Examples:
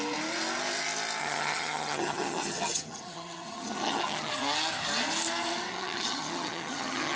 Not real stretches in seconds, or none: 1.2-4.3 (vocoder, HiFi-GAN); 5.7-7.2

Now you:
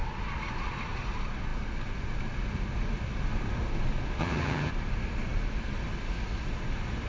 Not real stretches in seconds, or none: 4.2-4.7 (vocoder, HiFi-GAN)

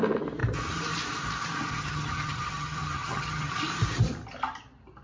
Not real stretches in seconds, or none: 1.7-3.5 (vocoder, HiFi-GAN)

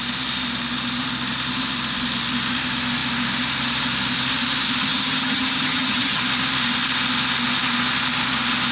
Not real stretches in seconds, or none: 4.8-6.2 (vocoder, HiFi-GAN)

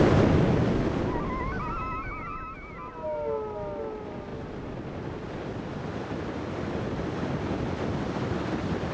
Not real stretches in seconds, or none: none

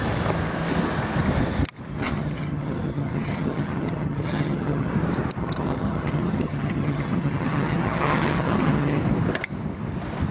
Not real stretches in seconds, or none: 1.9-4.9 (vocoder, HiFi-GAN); 5.4-9.0

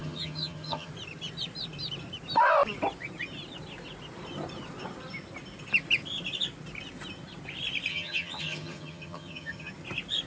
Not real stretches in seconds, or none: 0.0-0.9 (vocoder, HiFi-GAN); 7.9-9.7

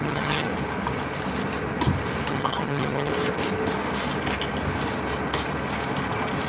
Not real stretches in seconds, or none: 0.0-0.5 (vocoder, HiFi-GAN); 2.3-3.1